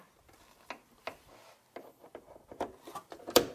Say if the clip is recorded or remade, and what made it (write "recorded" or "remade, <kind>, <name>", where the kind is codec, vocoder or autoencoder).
recorded